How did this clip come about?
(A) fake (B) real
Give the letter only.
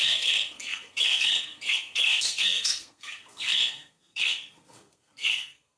A